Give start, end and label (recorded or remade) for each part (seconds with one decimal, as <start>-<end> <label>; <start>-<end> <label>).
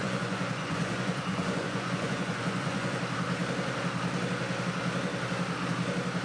0.0-3.0 remade; 3.0-6.2 recorded